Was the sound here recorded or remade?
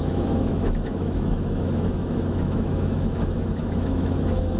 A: remade